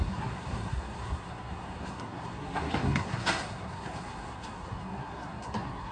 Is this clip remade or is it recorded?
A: remade